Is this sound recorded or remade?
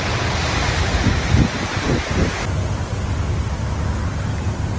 recorded